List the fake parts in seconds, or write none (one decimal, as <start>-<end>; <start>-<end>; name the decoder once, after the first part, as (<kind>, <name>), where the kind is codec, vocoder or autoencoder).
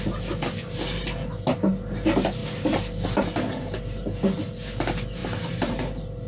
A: none